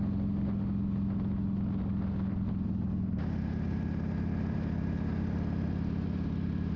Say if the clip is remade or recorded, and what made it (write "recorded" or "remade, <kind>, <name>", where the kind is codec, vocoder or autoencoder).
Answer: recorded